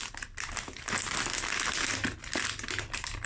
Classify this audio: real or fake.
real